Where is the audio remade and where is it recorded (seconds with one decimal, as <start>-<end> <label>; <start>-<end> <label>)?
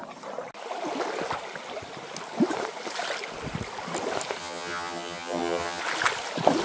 0.0-4.4 recorded; 4.4-5.8 remade; 5.8-6.6 recorded